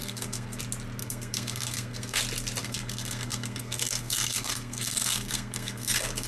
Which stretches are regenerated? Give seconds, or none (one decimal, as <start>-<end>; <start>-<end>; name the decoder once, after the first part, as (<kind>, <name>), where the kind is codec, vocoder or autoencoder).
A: 0.0-0.6 (codec, SNAC); 1.0-2.2; 2.6-6.3